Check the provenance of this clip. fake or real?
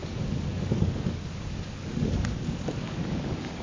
fake